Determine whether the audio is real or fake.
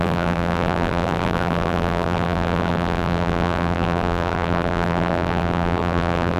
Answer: fake